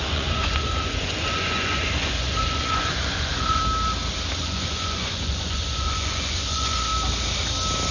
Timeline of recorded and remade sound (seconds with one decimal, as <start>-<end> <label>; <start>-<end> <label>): 0.0-3.6 remade; 3.6-4.4 recorded; 4.4-6.9 remade; 6.9-7.9 recorded